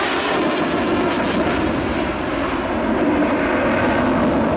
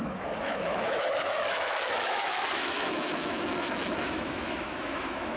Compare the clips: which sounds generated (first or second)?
second